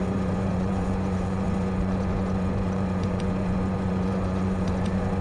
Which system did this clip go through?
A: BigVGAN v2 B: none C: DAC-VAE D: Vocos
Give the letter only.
D